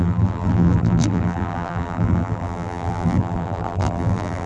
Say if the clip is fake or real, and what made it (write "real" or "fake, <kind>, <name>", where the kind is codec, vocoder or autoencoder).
fake, vocoder, BigVGAN v2